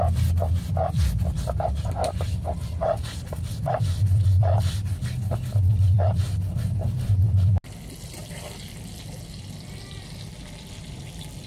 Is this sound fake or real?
real